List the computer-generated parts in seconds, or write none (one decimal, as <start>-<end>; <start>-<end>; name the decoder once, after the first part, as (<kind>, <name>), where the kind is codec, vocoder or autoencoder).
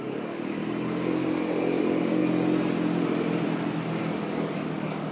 0.0-0.6 (codec, DAC); 1.8-2.2; 4.0-5.1